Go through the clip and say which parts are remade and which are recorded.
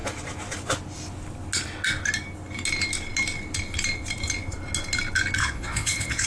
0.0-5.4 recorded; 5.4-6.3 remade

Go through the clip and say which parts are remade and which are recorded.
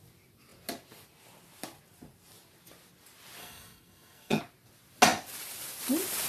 0.0-3.4 recorded; 3.4-4.4 remade; 4.4-6.3 recorded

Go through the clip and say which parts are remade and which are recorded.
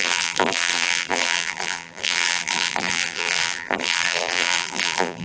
0.0-5.2 remade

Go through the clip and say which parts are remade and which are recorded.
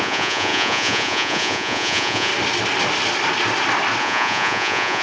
0.0-2.3 remade; 2.3-4.0 recorded; 4.0-5.0 remade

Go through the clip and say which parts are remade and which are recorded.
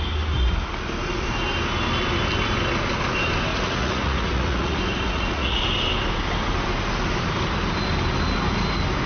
0.0-3.5 recorded; 3.5-5.6 remade; 5.6-9.1 recorded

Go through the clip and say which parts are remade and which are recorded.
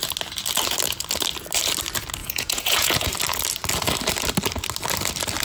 0.0-2.2 recorded; 2.2-3.1 remade; 3.1-5.4 recorded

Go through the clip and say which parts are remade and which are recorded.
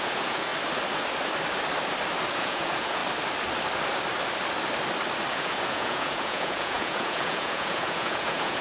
0.0-0.5 remade; 0.5-2.3 recorded; 2.3-3.0 remade; 3.0-5.3 recorded; 5.3-8.6 remade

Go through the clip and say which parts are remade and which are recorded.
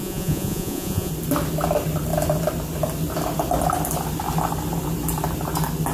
0.0-1.1 remade; 1.1-5.9 recorded